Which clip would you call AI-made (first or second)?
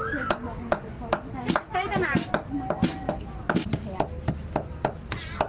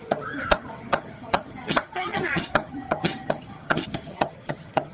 second